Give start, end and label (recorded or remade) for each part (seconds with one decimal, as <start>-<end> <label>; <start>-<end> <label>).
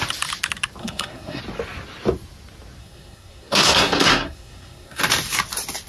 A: 0.0-0.8 recorded; 0.8-1.4 remade; 1.4-2.8 recorded; 2.8-5.0 remade; 5.0-5.9 recorded